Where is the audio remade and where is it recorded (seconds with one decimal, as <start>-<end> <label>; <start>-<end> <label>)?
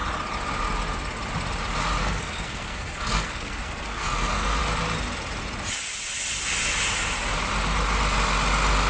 0.0-2.0 recorded; 2.0-4.6 remade; 4.6-8.9 recorded